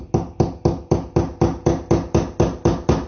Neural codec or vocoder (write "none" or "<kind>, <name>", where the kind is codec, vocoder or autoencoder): none